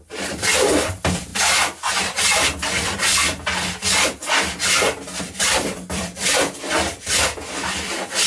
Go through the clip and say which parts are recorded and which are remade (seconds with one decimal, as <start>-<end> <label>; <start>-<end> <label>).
0.0-1.3 remade; 1.3-5.2 recorded; 5.2-8.3 remade